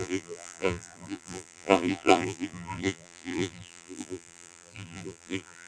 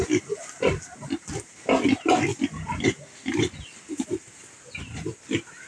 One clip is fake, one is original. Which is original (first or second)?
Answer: second